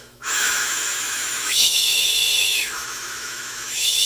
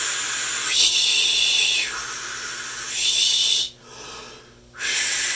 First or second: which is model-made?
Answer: first